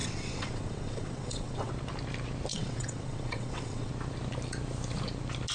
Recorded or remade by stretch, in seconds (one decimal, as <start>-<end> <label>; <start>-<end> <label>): 0.0-1.7 remade; 1.7-2.5 recorded; 2.5-3.9 remade; 3.9-5.5 recorded